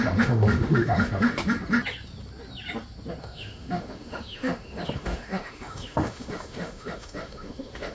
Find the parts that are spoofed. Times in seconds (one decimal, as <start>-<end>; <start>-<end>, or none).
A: 0.0-1.4; 3.2-7.9